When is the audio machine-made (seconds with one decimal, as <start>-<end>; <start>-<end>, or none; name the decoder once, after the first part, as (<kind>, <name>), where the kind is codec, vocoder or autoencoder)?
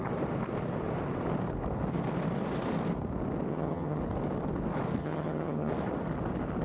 3.5-4.0 (vocoder, HiFi-GAN); 5.0-5.7